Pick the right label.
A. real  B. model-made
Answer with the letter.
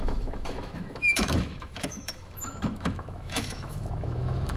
B